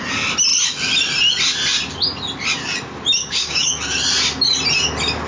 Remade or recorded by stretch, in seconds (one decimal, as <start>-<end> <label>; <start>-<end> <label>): 0.0-3.2 recorded; 3.2-3.7 remade; 3.7-5.3 recorded